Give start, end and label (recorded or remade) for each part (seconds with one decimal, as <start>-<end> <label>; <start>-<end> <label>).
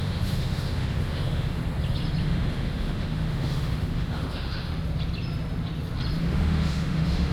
0.0-1.6 remade; 1.6-2.2 recorded; 2.2-4.7 remade; 4.7-6.2 recorded; 6.2-7.3 remade